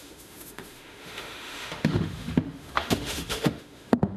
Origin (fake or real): fake